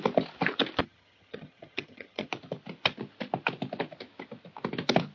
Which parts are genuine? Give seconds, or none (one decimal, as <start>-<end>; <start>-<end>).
0.0-0.8; 2.3-5.1